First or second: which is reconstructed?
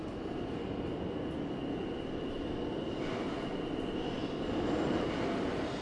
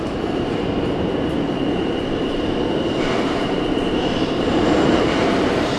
second